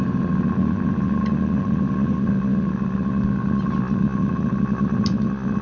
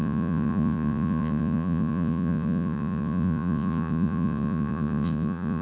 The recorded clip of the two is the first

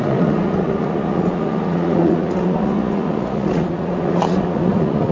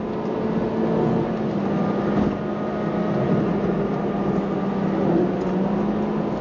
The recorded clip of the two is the second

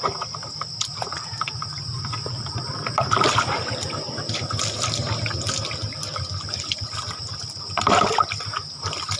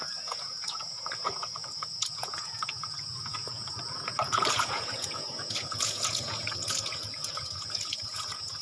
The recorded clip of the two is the first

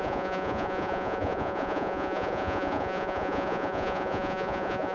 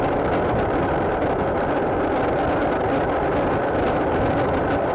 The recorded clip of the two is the second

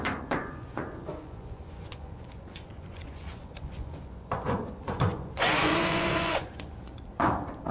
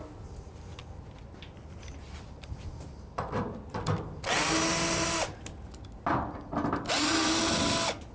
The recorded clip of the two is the second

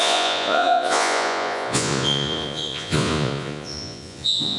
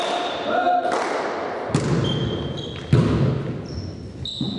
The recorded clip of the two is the second